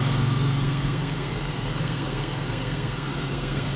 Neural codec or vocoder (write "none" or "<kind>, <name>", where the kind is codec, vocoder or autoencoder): codec, SNAC